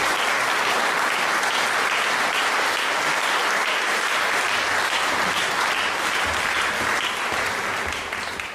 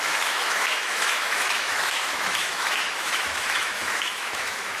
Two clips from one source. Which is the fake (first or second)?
second